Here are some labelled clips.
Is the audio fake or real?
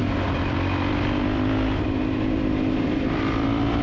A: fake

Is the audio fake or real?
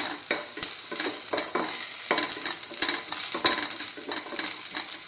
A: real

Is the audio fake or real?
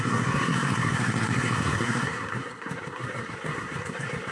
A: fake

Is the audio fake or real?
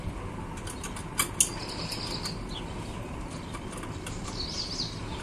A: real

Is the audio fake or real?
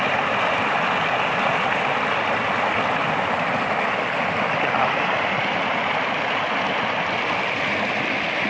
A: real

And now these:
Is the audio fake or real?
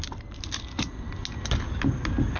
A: real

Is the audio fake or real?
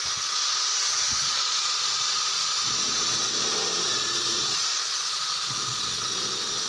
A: fake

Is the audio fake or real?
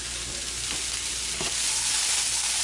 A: real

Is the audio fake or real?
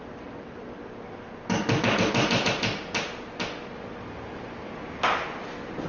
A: real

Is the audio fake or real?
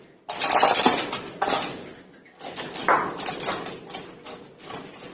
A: real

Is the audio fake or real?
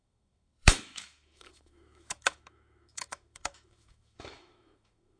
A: fake